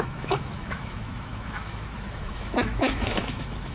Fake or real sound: fake